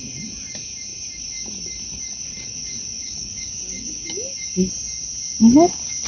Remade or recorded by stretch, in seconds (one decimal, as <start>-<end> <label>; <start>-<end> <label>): 0.0-3.0 recorded; 3.0-4.1 remade; 4.1-6.1 recorded